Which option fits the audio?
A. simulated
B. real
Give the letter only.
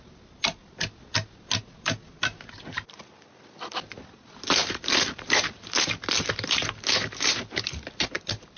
B